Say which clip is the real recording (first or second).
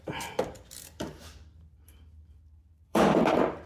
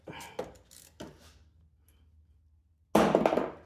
second